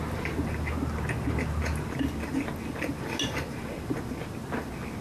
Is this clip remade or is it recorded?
recorded